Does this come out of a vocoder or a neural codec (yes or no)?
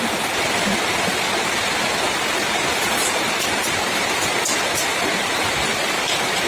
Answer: no